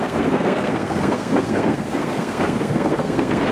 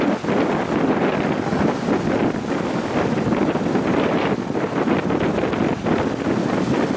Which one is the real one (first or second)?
second